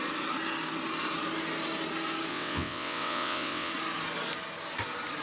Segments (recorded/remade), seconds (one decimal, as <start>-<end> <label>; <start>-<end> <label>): 0.0-2.3 recorded; 2.3-3.7 remade; 3.7-5.2 recorded